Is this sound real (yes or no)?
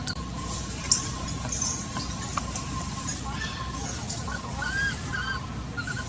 yes